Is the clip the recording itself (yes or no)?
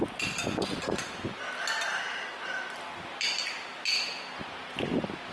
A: yes